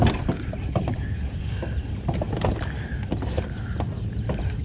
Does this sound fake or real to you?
real